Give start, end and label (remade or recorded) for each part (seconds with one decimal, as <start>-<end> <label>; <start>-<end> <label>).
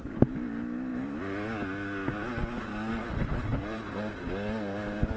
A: 0.0-5.2 recorded